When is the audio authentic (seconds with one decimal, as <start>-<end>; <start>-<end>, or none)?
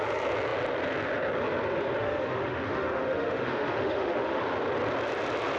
0.0-2.0; 4.4-5.6